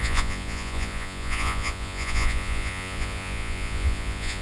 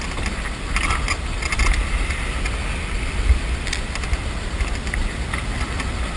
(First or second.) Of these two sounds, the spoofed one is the first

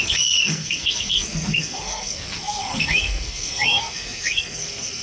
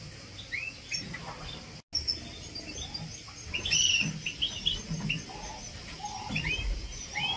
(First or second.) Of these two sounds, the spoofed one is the first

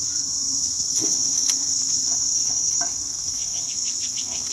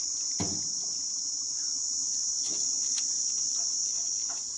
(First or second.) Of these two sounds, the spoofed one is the first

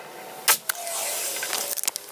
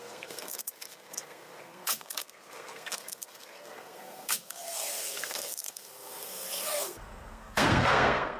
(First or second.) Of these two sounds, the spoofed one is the second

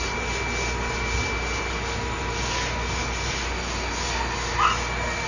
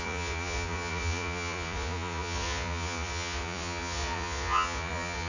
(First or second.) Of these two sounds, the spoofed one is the second